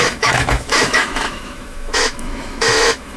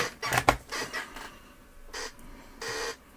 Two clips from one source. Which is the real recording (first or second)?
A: second